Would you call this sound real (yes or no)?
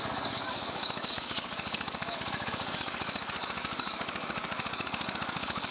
no